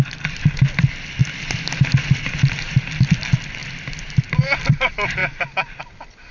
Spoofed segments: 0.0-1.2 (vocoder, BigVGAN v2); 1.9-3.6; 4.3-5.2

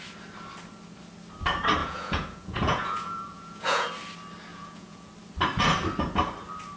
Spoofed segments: 1.8-3.9 (vocoder, Vocos); 4.5-5.1

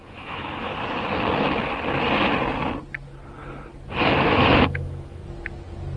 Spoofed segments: 0.0-0.7 (autoencoder, DAC-VAE); 4.0-5.2

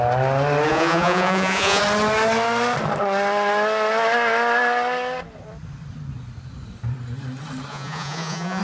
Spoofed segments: 0.7-1.8 (vocoder, Vocos); 7.7-8.6

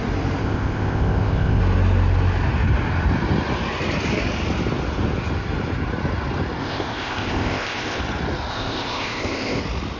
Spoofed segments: 0.4-1.6 (codec, ZipCodec); 6.6-8.0; 8.5-9.6

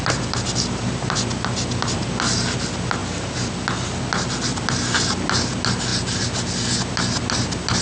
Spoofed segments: 3.0-3.5 (vocoder, BigVGAN v2)

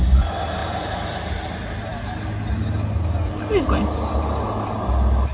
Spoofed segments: 0.6-1.3 (vocoder, BigVGAN v2)

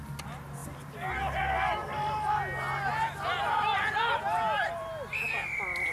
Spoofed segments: none